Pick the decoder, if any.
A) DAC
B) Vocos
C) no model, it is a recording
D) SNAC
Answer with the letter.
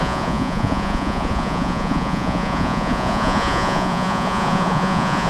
B